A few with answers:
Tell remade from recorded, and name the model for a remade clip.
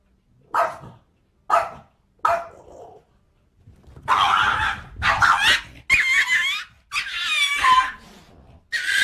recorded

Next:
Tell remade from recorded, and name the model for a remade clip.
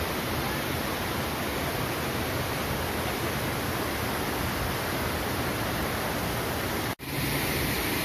recorded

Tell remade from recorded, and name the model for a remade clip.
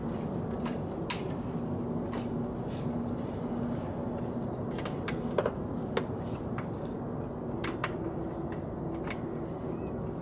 recorded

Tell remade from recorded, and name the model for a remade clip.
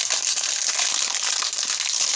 recorded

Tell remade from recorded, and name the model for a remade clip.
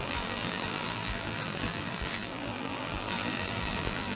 remade, vocoder, BigVGAN v2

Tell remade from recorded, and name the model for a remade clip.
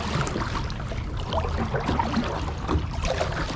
recorded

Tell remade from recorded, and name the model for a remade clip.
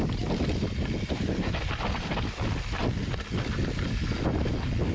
recorded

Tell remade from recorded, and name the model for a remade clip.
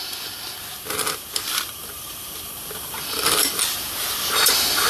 recorded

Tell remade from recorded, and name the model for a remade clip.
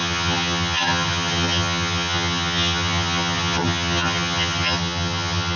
remade, vocoder, HiFi-GAN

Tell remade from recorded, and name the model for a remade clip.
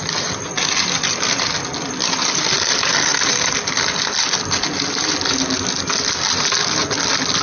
recorded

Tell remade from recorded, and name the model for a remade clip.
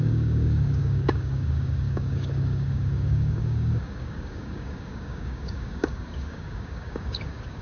remade, codec, DAC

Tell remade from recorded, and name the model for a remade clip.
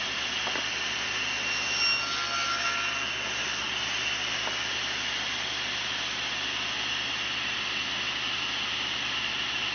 recorded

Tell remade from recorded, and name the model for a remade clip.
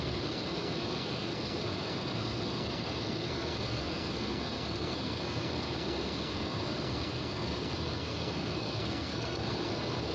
remade, codec, SNAC